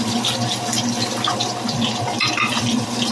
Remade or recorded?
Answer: remade